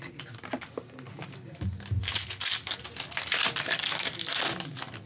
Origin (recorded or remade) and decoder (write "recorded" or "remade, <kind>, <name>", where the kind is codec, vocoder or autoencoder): recorded